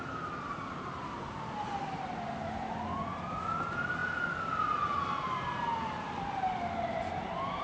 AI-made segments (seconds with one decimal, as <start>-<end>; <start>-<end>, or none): none